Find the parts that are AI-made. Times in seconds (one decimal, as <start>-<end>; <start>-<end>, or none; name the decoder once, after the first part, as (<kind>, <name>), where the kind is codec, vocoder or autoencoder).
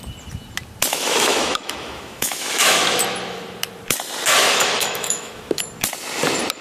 0.9-3.0 (autoencoder, DAC-VAE); 4.4-5.6